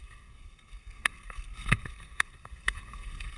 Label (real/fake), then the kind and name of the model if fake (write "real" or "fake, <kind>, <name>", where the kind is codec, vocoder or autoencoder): fake, codec, SNAC